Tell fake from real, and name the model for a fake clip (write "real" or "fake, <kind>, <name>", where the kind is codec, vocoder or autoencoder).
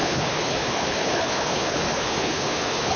fake, codec, HILCodec